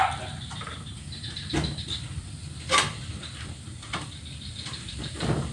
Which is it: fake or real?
fake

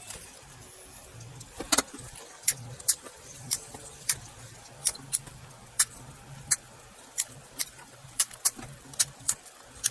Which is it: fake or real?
fake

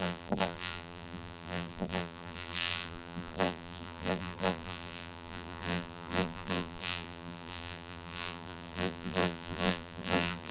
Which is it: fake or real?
fake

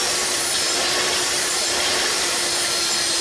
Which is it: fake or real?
fake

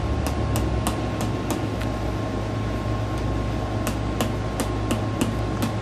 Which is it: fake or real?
real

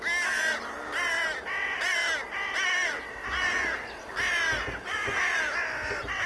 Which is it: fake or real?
real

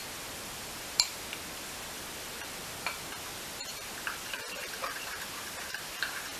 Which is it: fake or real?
fake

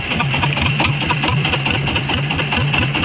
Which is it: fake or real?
fake